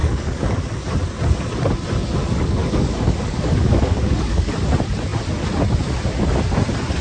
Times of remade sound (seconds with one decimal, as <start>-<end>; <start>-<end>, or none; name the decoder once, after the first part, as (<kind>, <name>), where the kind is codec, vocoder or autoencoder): 0.0-0.6 (codec, DAC); 2.2-4.5